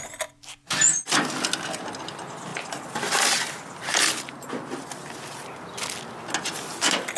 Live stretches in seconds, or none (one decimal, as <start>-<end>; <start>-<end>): 0.0-7.2